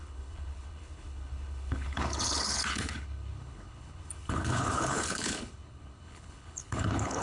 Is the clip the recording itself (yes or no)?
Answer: no